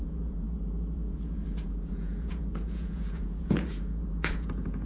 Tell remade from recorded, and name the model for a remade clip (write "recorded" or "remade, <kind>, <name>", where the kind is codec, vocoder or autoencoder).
remade, vocoder, Vocos